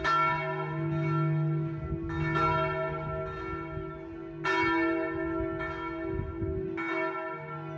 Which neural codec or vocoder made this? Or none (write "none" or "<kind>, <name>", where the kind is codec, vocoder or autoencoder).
none